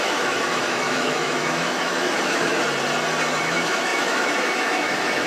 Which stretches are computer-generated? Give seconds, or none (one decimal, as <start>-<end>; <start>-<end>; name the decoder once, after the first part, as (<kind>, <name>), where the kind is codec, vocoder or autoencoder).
0.0-2.5 (autoencoder, DAC-VAE); 3.4-5.3